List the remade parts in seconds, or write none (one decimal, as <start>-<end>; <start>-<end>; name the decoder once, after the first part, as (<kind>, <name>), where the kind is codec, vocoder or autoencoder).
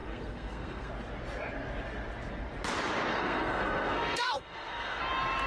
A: 0.0-0.9 (codec, SNAC); 3.1-5.0